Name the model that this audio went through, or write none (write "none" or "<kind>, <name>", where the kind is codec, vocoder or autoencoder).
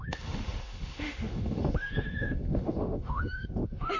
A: autoencoder, DAC-VAE